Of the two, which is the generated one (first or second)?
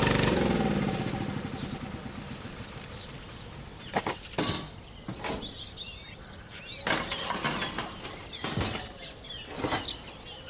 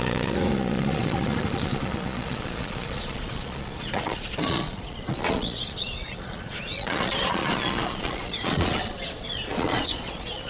second